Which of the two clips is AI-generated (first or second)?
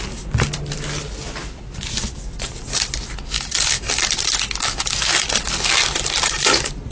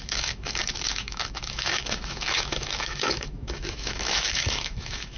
second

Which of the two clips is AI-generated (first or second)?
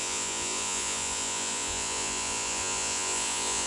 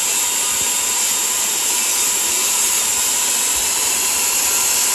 first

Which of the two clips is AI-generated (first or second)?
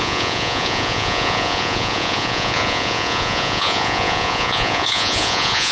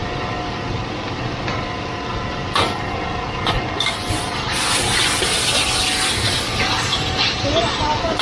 first